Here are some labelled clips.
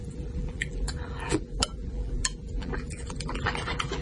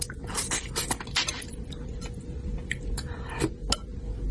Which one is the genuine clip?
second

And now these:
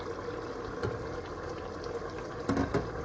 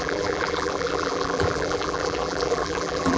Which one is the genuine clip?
first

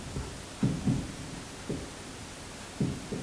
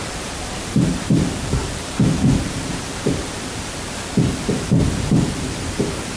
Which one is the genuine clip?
first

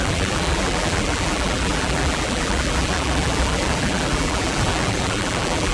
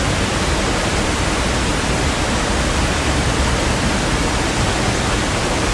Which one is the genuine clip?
second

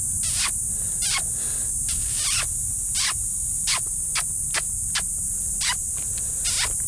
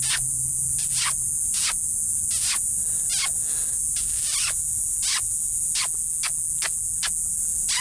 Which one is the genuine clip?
second